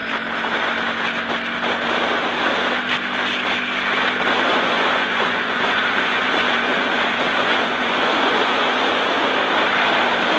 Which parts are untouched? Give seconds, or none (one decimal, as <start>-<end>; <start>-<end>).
0.0-4.5; 9.3-10.4